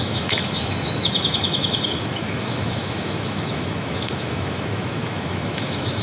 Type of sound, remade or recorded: remade